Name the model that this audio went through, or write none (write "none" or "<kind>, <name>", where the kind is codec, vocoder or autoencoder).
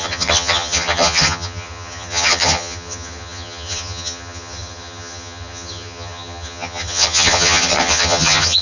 vocoder, HiFi-GAN